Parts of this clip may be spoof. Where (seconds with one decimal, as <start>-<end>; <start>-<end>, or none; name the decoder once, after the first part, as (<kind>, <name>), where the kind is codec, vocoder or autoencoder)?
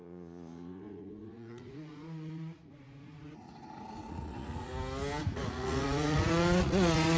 0.0-4.7 (vocoder, Vocos); 5.2-7.2